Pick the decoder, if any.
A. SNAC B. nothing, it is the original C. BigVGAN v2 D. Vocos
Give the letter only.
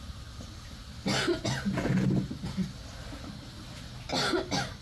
B